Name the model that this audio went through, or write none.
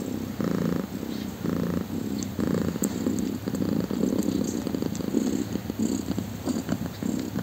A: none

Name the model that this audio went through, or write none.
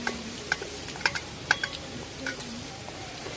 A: vocoder, BigVGAN v2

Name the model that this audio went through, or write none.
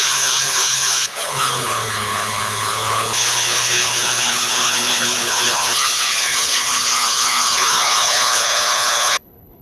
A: codec, HILCodec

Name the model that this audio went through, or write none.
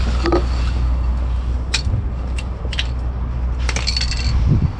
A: none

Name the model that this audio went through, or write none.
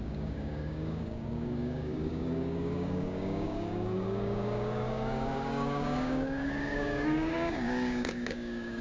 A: codec, DAC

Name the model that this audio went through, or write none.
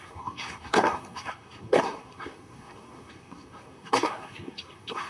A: codec, SNAC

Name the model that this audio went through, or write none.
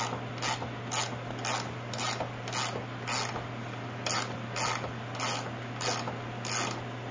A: none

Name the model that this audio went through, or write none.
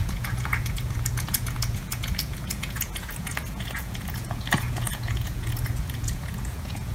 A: vocoder, Vocos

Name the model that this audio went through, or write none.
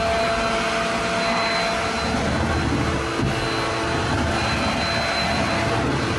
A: none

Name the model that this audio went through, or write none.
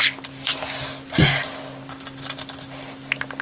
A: vocoder, BigVGAN v2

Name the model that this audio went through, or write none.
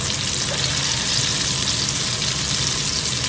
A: none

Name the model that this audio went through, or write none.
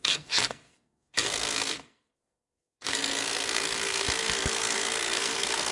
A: codec, SNAC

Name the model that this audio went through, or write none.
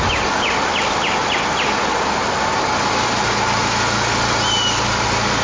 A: none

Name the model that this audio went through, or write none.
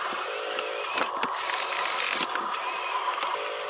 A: none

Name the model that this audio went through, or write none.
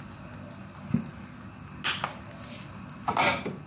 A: none